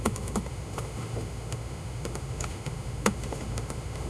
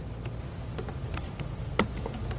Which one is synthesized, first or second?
first